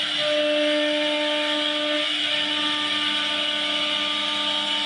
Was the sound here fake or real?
real